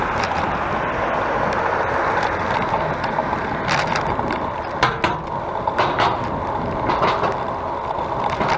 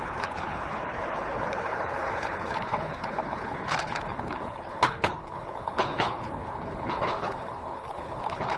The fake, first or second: second